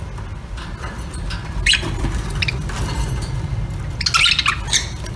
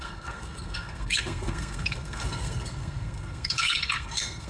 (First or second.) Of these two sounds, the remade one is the second